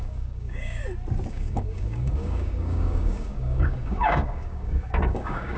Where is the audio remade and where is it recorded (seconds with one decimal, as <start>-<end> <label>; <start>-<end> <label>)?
0.0-0.8 remade; 0.8-1.3 recorded; 1.3-5.6 remade